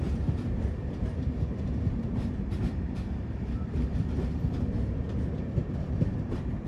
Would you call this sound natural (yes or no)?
no